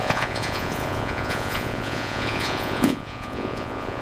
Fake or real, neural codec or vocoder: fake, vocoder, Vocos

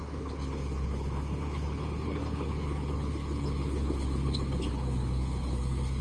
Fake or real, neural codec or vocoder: fake, codec, HILCodec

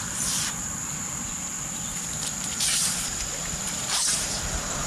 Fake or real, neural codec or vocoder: fake, vocoder, BigVGAN v2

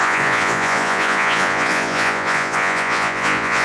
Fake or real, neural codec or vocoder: fake, vocoder, Vocos